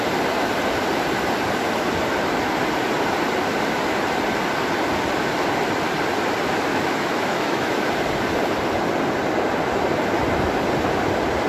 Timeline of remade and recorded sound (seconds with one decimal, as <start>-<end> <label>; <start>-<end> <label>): 0.0-6.7 recorded; 6.7-7.9 remade; 7.9-11.5 recorded